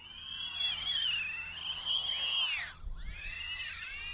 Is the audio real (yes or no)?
yes